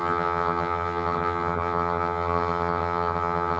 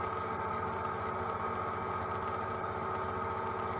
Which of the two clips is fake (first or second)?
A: first